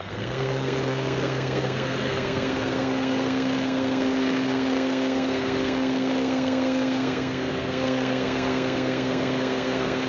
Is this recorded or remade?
remade